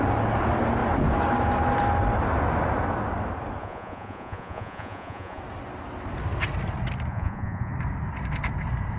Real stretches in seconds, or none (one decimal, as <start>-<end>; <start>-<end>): 0.0-3.6; 5.4-7.1; 7.7-9.0